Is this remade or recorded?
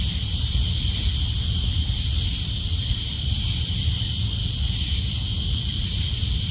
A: remade